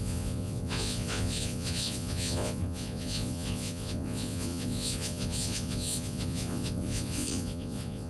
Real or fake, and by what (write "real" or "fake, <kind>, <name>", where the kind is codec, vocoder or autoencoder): fake, vocoder, Vocos